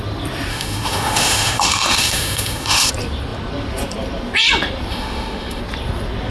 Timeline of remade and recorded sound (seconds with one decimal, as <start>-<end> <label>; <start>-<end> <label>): 0.0-0.5 recorded; 0.5-2.9 remade; 2.9-4.9 recorded; 4.9-5.6 remade; 5.6-6.3 recorded